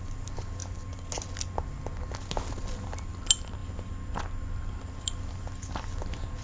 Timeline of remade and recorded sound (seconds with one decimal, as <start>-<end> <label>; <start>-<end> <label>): 0.0-6.4 recorded